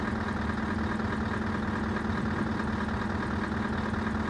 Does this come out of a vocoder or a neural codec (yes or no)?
no